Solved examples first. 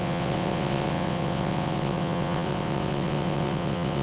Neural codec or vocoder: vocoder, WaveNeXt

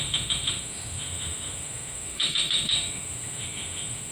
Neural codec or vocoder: autoencoder, DAC-VAE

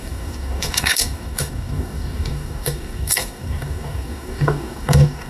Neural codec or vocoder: codec, DAC